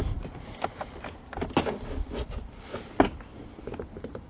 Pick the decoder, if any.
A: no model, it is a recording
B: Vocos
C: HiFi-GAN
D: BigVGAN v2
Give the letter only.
A